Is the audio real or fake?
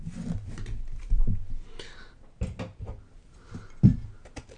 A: real